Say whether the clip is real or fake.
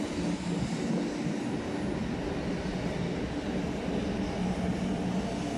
real